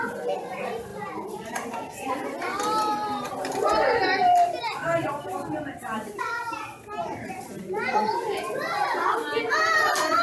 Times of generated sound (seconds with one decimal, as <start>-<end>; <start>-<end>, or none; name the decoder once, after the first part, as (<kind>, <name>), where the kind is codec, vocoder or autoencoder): none